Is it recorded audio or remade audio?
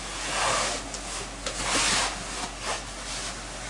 recorded